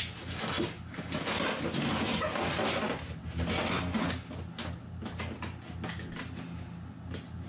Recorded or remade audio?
recorded